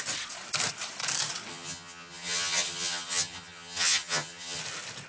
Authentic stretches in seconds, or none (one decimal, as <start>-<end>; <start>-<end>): 0.0-1.5; 4.6-5.1